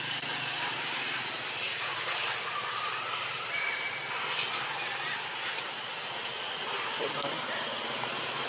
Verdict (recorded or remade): recorded